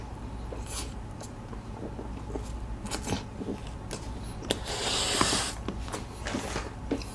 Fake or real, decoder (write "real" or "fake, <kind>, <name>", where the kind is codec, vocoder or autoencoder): real